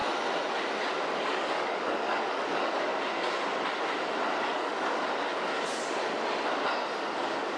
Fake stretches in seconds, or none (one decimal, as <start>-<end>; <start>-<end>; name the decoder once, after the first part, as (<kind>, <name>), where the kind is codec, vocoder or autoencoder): 1.2-2.9 (codec, DAC); 4.4-5.8; 7.0-7.6